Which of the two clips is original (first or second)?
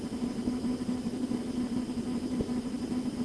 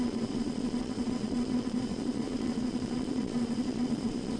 first